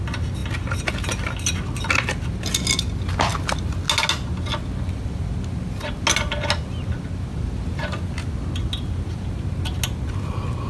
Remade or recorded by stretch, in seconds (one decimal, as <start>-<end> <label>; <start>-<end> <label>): 0.0-10.7 recorded